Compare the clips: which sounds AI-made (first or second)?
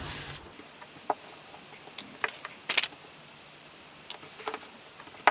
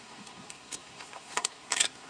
second